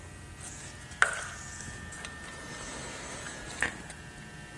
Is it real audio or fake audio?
real